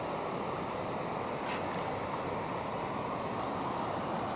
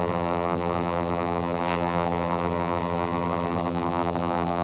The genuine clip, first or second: first